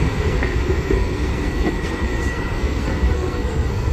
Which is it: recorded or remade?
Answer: remade